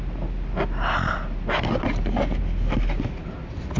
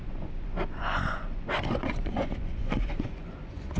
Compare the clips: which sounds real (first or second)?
first